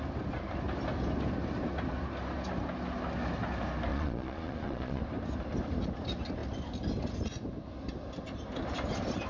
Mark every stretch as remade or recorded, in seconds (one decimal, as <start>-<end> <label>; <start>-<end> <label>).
0.0-3.9 recorded; 3.9-5.0 remade; 5.0-9.3 recorded